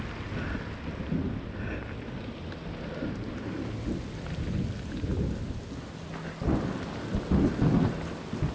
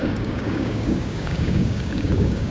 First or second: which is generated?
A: second